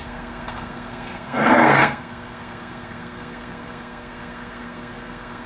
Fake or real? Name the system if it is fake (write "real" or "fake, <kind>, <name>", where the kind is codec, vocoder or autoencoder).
fake, codec, SNAC